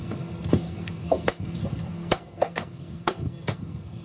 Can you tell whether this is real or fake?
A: fake